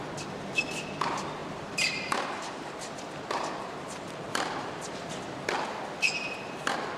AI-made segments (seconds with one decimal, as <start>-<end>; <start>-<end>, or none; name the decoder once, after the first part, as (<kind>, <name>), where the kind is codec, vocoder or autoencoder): 1.4-5.2 (vocoder, BigVGAN v2)